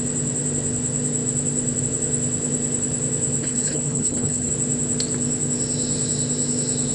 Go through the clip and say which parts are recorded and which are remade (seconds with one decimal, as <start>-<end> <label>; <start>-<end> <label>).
0.0-3.4 recorded; 3.4-4.5 remade; 4.5-6.9 recorded